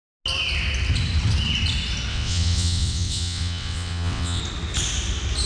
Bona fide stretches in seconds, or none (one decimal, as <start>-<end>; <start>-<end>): 0.0-2.1; 4.4-5.5